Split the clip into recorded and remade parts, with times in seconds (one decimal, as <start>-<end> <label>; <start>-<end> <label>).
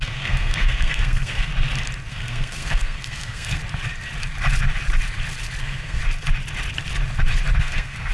0.0-1.5 remade; 1.5-2.1 recorded; 2.1-3.6 remade; 3.6-5.6 recorded; 5.6-6.0 remade; 6.0-7.6 recorded; 7.6-8.1 remade